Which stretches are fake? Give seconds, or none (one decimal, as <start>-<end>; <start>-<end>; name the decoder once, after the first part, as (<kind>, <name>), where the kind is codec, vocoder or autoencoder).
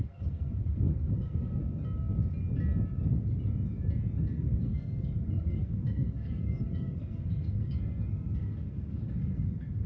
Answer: 0.0-1.6 (codec, SNAC); 4.2-9.9